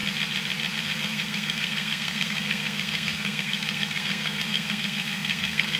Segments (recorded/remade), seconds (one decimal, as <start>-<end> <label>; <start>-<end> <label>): 0.0-0.8 recorded; 0.8-5.8 remade

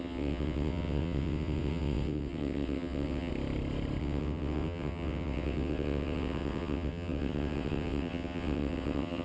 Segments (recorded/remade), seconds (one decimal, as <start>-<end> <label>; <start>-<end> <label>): 0.0-3.3 remade; 3.3-4.0 recorded; 4.0-9.2 remade